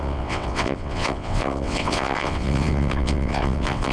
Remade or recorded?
remade